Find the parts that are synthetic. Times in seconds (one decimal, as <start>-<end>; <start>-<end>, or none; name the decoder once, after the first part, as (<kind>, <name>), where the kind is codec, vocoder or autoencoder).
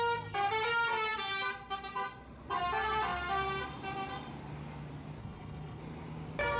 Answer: 5.2-5.8 (codec, HILCodec)